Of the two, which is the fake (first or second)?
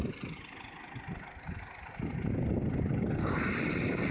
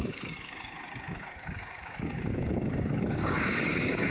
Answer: second